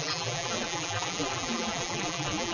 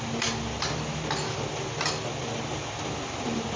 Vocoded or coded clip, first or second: first